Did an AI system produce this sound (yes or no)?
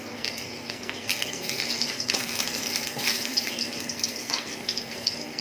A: yes